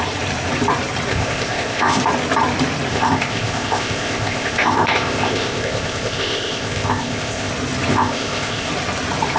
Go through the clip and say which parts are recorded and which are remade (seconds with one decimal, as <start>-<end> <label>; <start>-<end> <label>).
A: 0.0-1.1 recorded; 1.1-2.0 remade; 2.0-2.9 recorded; 2.9-7.5 remade; 7.5-7.9 recorded; 7.9-8.7 remade; 8.7-9.4 recorded